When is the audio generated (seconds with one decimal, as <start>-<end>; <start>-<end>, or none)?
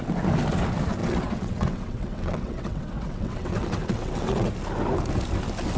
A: 1.0-4.5